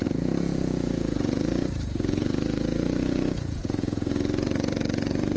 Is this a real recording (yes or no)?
no